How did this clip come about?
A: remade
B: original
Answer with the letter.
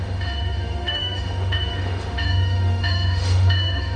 A